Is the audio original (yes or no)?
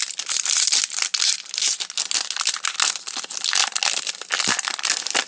yes